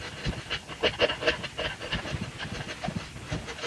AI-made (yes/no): no